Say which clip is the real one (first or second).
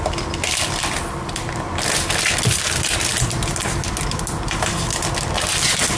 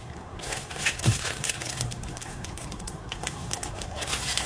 first